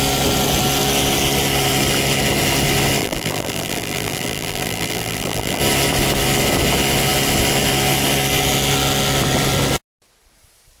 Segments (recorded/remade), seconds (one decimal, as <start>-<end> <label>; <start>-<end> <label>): 0.0-3.0 recorded; 3.0-5.6 remade; 5.6-10.8 recorded